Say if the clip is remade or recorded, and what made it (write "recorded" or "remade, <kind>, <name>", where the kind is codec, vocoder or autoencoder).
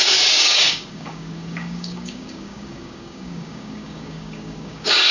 remade, codec, DAC